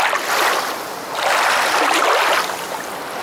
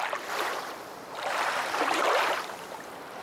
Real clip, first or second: first